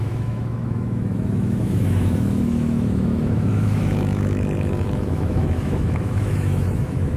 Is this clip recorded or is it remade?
remade